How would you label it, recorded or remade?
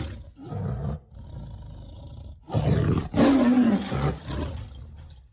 recorded